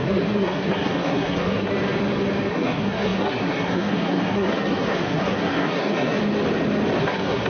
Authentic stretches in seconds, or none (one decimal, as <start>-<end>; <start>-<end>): 1.7-2.5; 6.2-7.0